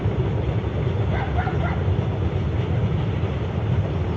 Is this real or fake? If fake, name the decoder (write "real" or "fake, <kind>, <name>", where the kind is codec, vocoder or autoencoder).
real